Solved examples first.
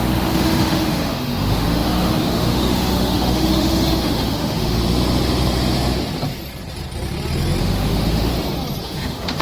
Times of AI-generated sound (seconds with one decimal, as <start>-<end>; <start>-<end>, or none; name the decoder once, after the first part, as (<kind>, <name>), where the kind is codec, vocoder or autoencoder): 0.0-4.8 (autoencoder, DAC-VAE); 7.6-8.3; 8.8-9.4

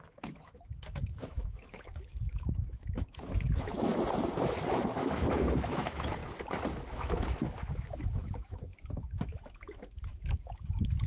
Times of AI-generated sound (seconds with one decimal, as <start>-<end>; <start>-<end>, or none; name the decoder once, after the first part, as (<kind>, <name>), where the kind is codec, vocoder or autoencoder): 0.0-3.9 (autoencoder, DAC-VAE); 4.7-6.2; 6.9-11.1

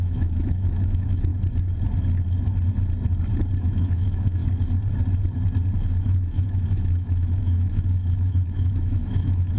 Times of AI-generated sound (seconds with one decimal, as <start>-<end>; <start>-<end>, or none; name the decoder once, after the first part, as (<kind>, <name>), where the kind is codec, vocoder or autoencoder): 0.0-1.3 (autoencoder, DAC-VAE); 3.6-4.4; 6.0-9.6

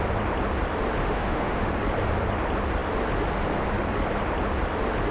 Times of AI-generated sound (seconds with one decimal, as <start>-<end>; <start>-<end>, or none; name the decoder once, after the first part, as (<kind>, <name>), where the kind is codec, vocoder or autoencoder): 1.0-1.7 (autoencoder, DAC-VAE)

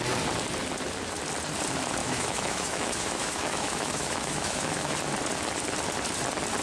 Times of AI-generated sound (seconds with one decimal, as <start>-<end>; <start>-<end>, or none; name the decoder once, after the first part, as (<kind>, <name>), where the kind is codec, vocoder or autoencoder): 2.0-4.9 (autoencoder, DAC-VAE)

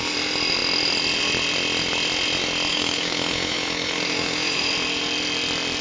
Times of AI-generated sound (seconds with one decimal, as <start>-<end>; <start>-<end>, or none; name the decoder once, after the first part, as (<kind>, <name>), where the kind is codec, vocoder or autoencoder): 2.7-4.7 (autoencoder, DAC-VAE)

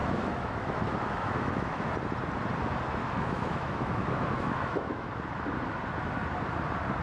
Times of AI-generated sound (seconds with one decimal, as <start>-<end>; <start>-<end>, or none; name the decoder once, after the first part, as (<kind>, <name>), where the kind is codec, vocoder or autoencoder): 0.0-1.9 (autoencoder, DAC-VAE); 3.0-5.1

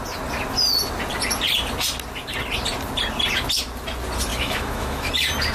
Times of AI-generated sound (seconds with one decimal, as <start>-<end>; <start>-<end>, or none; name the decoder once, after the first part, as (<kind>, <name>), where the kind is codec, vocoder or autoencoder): 4.3-5.1 (autoencoder, DAC-VAE)